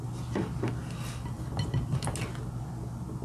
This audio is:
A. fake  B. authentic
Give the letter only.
B